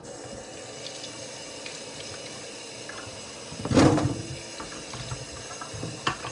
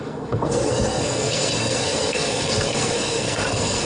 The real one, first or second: first